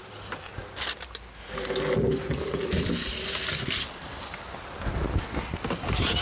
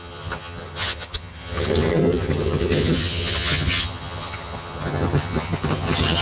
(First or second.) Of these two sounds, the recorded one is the first